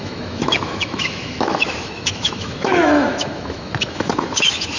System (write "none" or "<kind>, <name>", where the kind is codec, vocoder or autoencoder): autoencoder, DAC-VAE